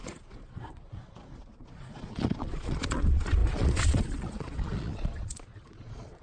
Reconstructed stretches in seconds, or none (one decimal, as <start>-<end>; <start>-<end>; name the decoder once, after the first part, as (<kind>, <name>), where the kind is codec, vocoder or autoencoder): 0.0-6.2 (vocoder, Vocos)